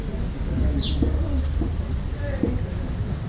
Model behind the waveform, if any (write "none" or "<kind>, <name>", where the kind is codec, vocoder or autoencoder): none